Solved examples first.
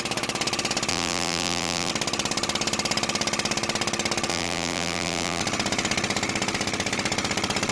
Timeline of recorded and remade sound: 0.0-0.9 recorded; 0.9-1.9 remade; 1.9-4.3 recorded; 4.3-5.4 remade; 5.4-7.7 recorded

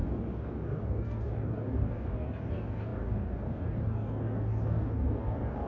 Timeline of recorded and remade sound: 0.0-5.7 remade

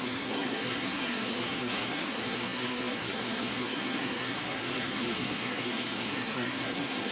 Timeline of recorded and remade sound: 0.0-7.1 remade